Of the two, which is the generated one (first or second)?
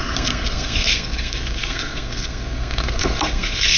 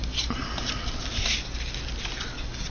first